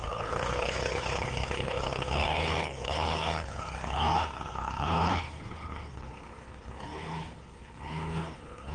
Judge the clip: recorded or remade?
remade